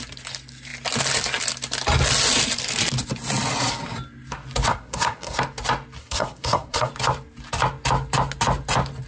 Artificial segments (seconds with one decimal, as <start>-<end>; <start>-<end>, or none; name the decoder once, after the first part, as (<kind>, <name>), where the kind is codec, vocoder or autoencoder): 4.7-5.4 (codec, SNAC); 6.0-6.9